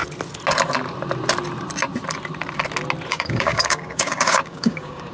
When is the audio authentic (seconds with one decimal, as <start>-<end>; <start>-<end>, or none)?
0.0-3.1